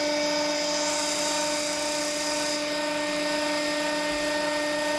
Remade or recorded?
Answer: recorded